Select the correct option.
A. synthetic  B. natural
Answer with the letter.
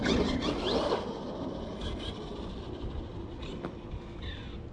B